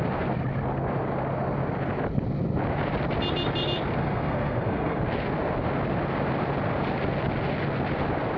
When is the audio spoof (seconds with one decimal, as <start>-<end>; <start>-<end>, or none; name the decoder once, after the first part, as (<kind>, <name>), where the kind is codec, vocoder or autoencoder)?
4.0-5.0 (codec, SNAC)